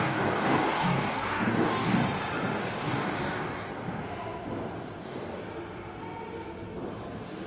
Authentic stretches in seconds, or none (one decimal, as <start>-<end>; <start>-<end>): 2.0-2.6; 3.7-5.0; 5.4-7.5